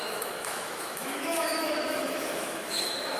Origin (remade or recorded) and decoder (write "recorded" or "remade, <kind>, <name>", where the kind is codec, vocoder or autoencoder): remade, autoencoder, DAC-VAE